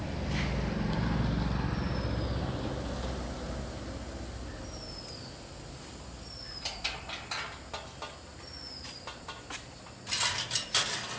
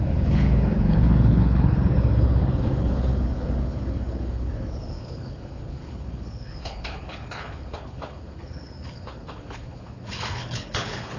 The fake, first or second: second